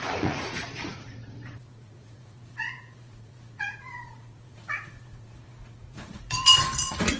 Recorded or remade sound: remade